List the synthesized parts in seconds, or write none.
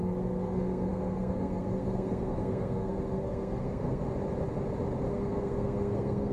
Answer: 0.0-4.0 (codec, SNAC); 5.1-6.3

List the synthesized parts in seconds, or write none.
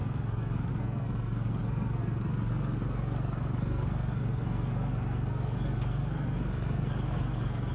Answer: 0.0-7.7 (codec, SNAC)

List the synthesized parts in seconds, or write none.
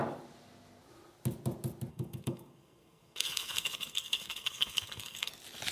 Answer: 1.9-5.3 (codec, SNAC)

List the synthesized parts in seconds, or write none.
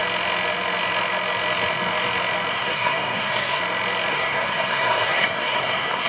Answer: 2.5-3.6 (codec, SNAC); 4.1-6.1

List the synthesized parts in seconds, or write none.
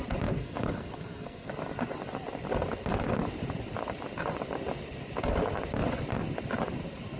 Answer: 0.4-1.5 (codec, SNAC)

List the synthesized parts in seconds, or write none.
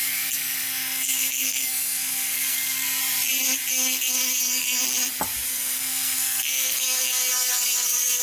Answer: 0.0-3.0 (codec, SNAC); 3.7-4.8; 5.5-8.2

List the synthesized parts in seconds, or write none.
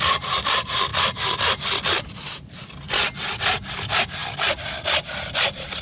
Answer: none